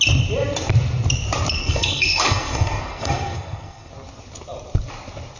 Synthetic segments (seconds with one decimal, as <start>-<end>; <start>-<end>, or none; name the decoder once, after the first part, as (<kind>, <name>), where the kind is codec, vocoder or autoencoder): 1.6-3.9 (codec, SNAC)